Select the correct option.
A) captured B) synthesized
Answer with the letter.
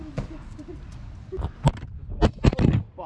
A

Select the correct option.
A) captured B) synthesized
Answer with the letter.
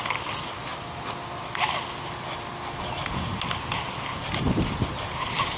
A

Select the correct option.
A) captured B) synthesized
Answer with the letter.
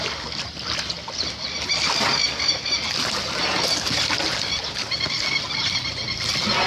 A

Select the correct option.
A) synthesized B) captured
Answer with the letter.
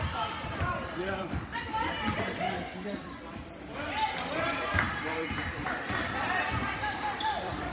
A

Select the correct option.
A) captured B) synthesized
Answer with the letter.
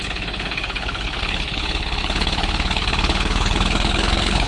B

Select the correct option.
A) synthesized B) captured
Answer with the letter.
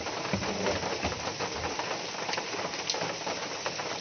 B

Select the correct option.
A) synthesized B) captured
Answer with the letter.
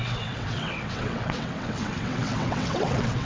A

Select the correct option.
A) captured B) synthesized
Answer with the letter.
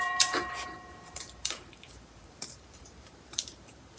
B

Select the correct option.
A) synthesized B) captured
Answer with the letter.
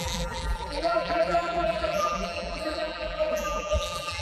A